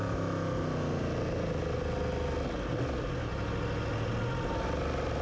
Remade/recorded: recorded